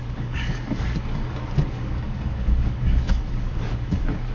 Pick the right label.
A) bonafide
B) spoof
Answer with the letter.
B